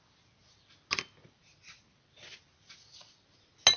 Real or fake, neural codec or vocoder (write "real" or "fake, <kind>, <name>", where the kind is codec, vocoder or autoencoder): real